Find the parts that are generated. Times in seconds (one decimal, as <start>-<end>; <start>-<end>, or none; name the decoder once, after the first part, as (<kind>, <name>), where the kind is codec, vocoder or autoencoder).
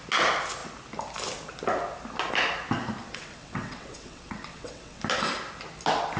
3.0-5.0 (vocoder, WaveNeXt)